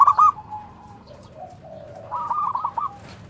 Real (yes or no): no